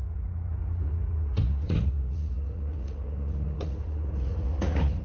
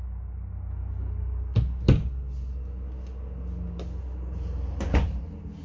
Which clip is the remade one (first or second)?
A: first